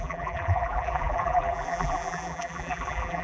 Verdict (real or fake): fake